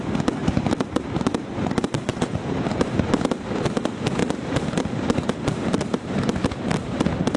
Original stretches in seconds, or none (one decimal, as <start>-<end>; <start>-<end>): 0.0-0.4; 3.3-4.2; 7.0-7.4